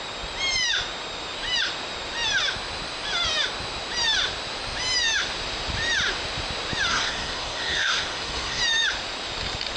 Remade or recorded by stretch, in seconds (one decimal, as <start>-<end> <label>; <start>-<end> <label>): 0.0-6.9 recorded; 6.9-8.6 remade; 8.6-9.8 recorded